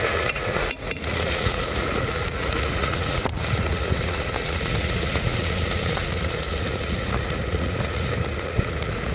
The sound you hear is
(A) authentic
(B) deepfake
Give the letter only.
B